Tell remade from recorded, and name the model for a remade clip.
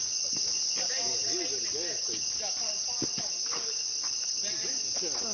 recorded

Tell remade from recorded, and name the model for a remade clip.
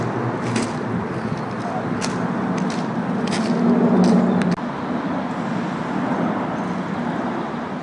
recorded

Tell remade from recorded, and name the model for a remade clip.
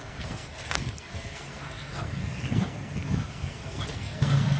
remade, codec, SNAC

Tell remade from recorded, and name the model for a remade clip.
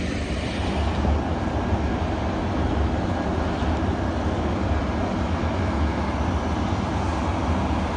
recorded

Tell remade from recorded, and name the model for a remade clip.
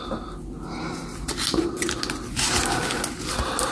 recorded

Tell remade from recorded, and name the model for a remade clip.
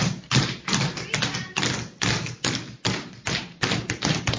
recorded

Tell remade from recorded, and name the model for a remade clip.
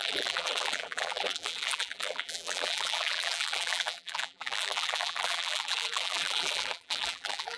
remade, vocoder, BigVGAN v2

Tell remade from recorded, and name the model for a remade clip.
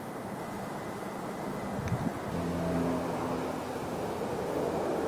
recorded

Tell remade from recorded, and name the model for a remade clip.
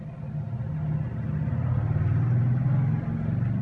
recorded